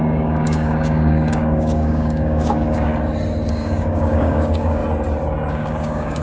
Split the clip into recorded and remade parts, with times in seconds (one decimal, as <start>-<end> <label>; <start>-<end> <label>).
0.0-2.9 remade; 2.9-3.5 recorded; 3.5-4.8 remade; 4.8-5.5 recorded; 5.5-6.2 remade